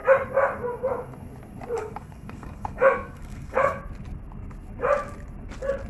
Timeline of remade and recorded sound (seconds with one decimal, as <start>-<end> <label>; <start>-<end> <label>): 0.0-1.8 recorded; 1.8-3.8 remade; 3.8-5.9 recorded

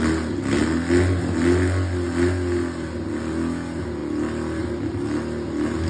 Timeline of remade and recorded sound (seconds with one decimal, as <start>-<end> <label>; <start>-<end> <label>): 0.0-5.9 recorded

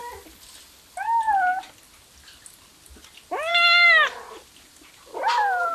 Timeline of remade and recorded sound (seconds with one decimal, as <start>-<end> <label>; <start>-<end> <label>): 0.0-5.7 recorded

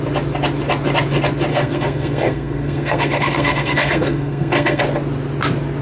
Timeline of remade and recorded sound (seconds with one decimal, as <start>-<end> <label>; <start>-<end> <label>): 0.0-1.5 recorded; 1.5-4.8 remade; 4.8-5.8 recorded

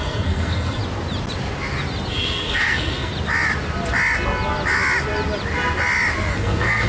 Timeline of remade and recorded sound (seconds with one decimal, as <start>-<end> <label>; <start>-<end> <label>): 0.0-0.8 remade; 0.8-2.1 recorded; 2.1-3.1 remade; 3.1-6.3 recorded; 6.3-6.9 remade

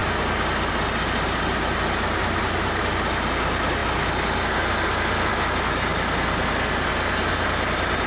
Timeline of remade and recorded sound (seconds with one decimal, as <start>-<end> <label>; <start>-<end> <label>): 0.0-8.1 recorded

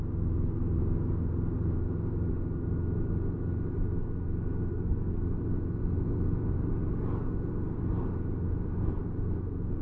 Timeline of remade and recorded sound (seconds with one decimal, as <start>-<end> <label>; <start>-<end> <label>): 0.0-4.7 recorded; 4.7-5.3 remade; 5.3-9.8 recorded